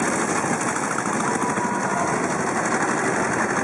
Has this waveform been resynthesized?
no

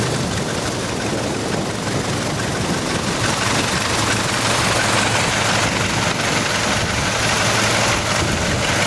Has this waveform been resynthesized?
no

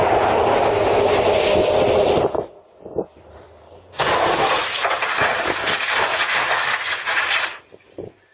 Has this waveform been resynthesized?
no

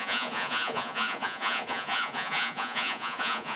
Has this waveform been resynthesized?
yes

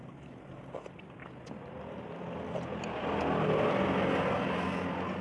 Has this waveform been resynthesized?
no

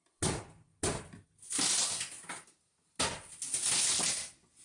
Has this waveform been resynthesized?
no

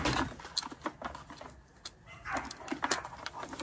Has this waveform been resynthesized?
no